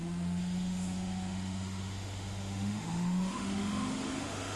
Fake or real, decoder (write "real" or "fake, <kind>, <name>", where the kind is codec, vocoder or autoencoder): fake, autoencoder, DAC-VAE